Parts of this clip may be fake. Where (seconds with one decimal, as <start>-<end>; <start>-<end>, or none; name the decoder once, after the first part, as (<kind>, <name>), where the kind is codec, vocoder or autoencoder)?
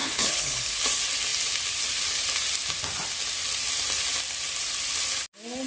0.0-0.8 (codec, HILCodec)